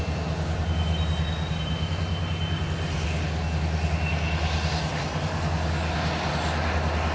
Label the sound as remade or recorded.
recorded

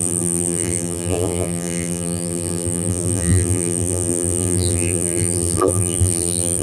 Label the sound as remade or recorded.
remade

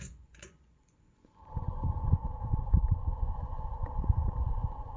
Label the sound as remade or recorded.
remade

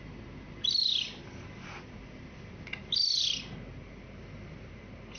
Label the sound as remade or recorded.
recorded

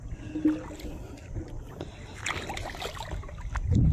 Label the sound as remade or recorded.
recorded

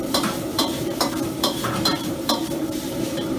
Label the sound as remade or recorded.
remade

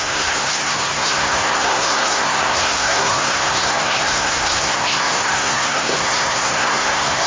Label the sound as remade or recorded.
remade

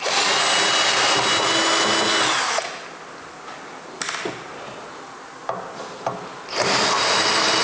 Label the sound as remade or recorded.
recorded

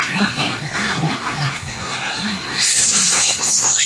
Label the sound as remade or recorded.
remade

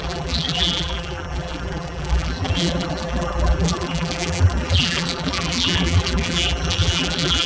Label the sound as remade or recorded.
remade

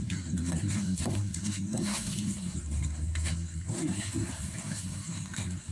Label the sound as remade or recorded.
remade